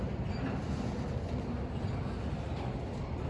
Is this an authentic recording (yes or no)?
yes